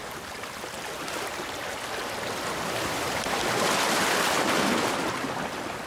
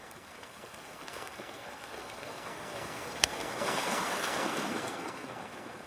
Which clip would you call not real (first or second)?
second